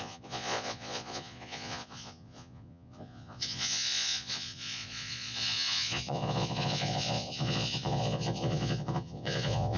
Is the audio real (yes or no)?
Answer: no